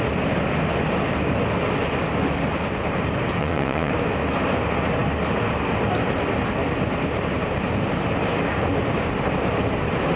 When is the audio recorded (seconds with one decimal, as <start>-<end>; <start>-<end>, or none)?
0.0-3.4; 3.9-10.2